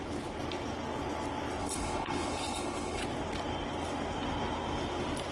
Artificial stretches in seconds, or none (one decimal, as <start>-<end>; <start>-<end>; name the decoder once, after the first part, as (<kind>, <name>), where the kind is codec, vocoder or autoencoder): 1.6-3.0 (codec, HILCodec)